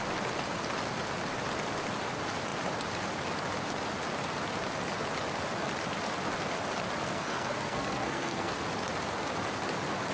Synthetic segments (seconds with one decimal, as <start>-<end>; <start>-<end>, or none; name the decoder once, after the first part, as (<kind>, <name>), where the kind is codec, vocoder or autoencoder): 7.0-8.5 (codec, SNAC)